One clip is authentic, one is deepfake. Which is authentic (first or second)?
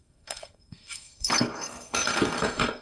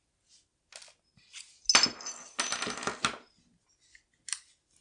second